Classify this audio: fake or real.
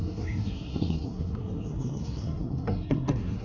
fake